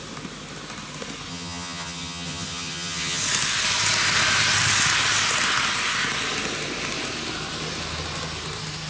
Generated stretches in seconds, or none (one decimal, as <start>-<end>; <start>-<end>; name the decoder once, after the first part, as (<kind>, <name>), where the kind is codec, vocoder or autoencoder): 1.3-3.2 (vocoder, HiFi-GAN)